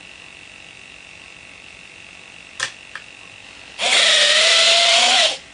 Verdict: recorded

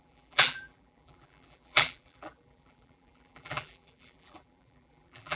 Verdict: remade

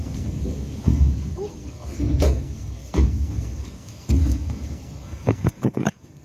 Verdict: remade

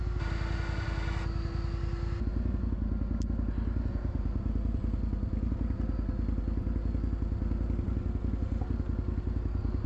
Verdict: recorded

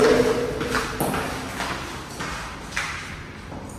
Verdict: recorded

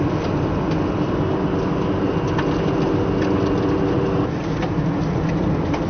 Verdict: recorded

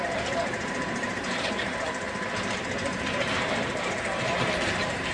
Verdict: remade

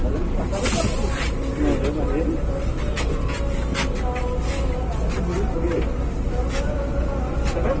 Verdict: recorded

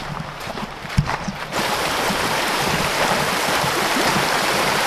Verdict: remade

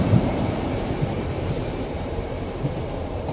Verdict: remade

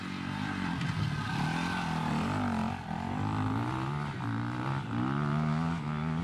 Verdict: recorded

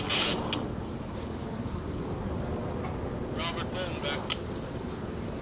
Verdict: recorded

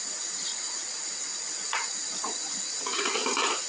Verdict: remade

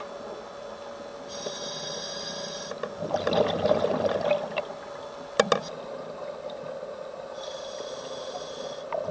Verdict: recorded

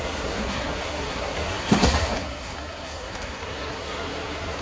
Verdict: remade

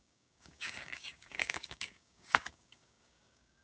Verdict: remade